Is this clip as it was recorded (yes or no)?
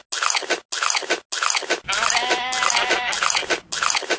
yes